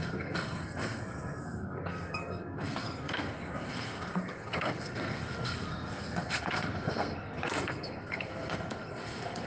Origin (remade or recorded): remade